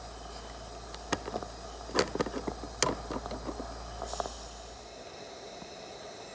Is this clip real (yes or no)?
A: yes